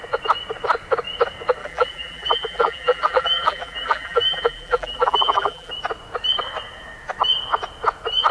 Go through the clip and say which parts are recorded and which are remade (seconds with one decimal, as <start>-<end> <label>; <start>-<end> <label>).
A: 0.0-1.6 recorded; 1.6-5.7 remade; 5.7-8.3 recorded